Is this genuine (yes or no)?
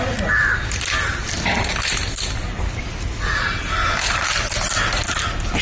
yes